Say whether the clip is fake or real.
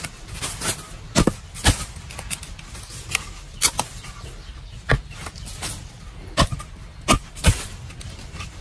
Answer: real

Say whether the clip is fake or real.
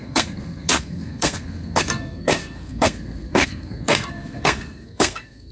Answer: fake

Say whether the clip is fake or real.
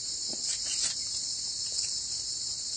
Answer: real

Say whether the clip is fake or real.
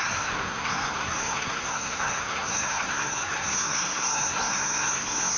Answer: fake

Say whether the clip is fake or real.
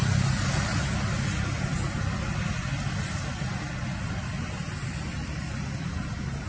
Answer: real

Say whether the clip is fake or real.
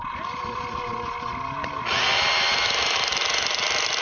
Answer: real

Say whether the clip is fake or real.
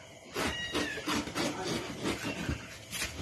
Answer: real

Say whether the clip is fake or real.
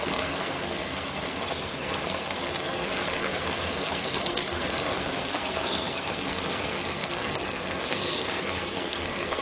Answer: fake